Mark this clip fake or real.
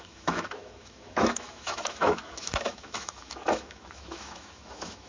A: fake